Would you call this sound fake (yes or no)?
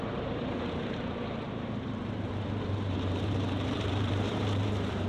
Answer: yes